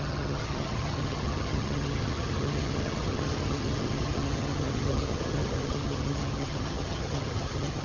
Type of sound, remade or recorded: remade